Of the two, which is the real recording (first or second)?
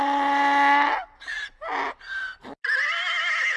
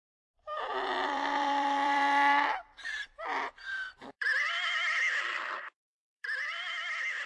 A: first